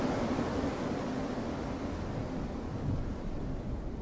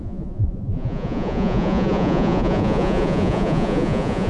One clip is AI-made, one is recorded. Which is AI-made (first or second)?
second